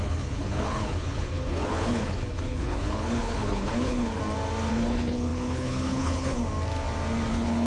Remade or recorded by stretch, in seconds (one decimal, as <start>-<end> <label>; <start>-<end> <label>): 0.0-4.2 remade; 4.2-4.7 recorded; 4.7-6.4 remade; 6.4-7.3 recorded; 7.3-7.7 remade